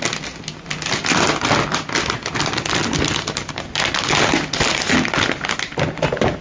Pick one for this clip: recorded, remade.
recorded